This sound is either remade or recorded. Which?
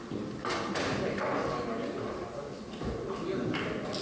recorded